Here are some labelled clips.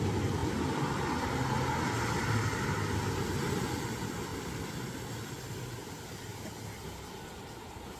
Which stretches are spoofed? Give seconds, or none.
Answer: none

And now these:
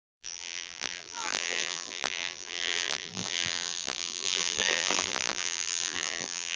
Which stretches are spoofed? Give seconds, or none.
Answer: 0.0-6.6 (vocoder, BigVGAN v2)

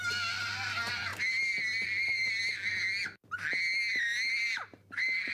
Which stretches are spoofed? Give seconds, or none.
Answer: 0.0-1.1 (vocoder, BigVGAN v2); 4.3-5.3

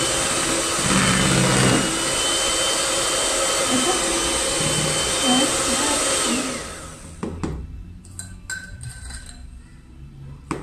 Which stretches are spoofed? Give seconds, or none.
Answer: none

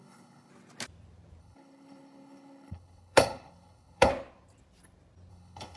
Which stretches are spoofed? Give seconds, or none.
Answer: 0.0-0.5 (codec, HILCodec); 1.4-4.1; 5.3-5.8